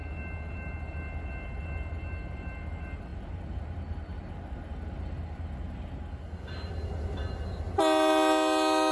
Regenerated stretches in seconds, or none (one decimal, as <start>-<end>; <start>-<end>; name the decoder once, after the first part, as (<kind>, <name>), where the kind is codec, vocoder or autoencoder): none